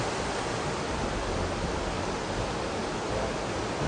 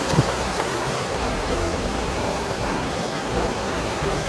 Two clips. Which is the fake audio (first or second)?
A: second